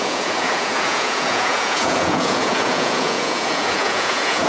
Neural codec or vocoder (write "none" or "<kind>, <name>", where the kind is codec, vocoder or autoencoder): vocoder, Vocos